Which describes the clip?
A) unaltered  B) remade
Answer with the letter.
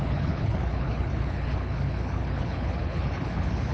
B